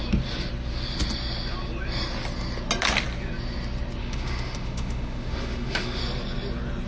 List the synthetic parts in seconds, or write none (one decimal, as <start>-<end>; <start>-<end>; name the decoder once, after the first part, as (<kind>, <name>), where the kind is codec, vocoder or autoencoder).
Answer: 4.0-6.0 (autoencoder, DAC-VAE)